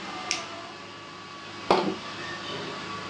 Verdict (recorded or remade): recorded